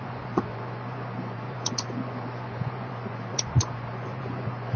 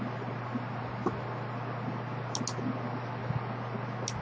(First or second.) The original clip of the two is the second